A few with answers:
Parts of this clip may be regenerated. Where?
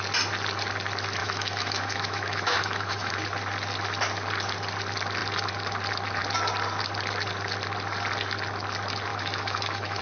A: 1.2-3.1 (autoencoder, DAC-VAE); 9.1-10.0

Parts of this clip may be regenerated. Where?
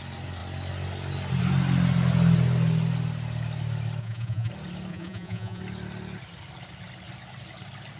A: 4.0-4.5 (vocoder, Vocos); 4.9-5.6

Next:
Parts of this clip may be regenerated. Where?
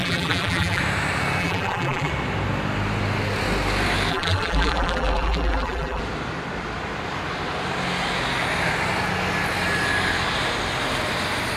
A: 0.0-0.8 (vocoder, BigVGAN v2); 1.4-2.1; 4.1-6.0